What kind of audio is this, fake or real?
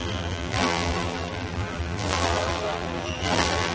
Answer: fake